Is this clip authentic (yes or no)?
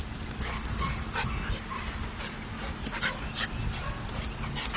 yes